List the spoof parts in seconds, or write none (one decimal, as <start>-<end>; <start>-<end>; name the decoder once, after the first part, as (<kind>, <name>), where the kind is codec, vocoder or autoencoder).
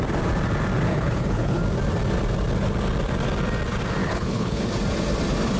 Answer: 0.9-1.6 (codec, HILCodec); 4.0-4.7